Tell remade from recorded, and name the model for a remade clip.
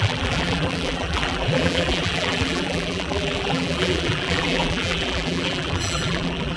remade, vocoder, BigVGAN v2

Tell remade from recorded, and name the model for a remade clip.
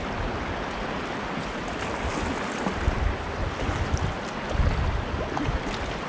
recorded